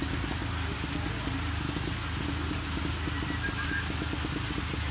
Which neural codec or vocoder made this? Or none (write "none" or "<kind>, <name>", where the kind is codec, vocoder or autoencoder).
none